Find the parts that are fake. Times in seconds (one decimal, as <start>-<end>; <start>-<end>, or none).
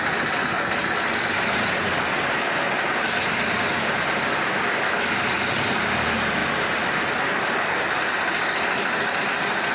none